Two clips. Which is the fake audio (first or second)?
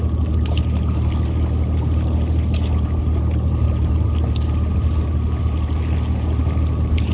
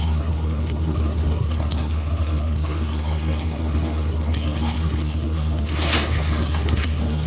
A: second